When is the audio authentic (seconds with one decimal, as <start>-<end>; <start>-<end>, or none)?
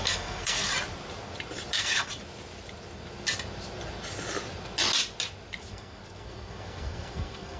0.7-1.7; 2.1-5.7